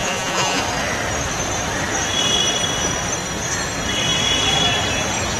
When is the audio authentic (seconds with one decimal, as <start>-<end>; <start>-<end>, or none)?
0.6-5.4